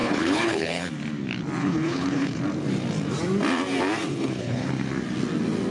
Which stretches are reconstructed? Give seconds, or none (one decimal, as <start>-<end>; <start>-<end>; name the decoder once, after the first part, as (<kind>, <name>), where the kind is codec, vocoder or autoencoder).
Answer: 0.0-0.9 (codec, HILCodec); 1.6-2.4; 4.1-4.7